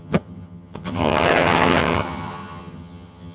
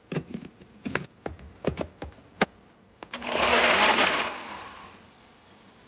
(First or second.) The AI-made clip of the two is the first